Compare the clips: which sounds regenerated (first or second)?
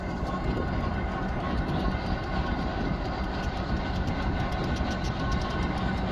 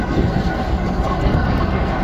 second